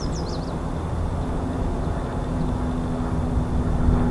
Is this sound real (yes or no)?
yes